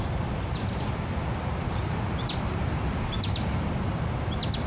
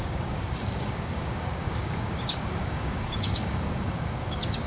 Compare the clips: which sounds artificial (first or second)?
second